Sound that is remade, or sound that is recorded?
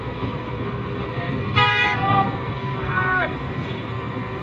remade